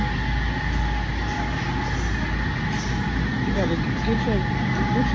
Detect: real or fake real